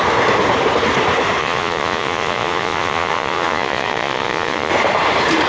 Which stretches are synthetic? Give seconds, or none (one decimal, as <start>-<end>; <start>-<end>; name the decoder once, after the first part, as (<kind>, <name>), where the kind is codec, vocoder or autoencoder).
1.4-4.7 (vocoder, Vocos)

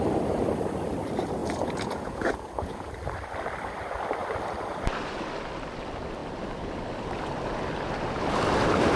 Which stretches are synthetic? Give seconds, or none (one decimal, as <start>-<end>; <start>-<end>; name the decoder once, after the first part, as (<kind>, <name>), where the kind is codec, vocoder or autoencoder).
1.4-2.9 (vocoder, Vocos)

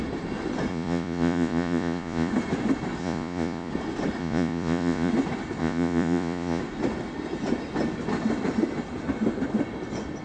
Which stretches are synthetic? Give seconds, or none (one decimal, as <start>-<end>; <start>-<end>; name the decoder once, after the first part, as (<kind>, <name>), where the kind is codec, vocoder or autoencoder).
0.7-2.3 (vocoder, Vocos); 3.0-3.7; 4.2-5.1; 5.6-6.6

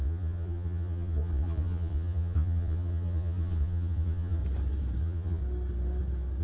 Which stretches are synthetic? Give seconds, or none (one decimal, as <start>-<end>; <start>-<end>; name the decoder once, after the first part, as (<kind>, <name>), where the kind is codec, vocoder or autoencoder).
0.0-4.4 (vocoder, Vocos); 5.0-5.4